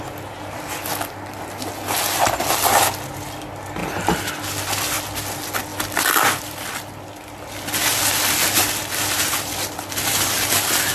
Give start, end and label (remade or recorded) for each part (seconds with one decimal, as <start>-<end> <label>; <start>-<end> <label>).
0.0-10.9 recorded

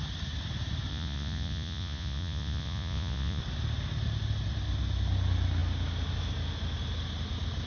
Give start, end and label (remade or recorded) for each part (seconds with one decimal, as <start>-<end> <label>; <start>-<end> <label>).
0.0-0.9 recorded; 0.9-3.4 remade; 3.4-7.7 recorded